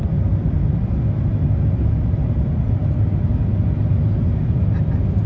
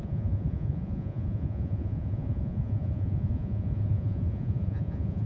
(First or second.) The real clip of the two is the first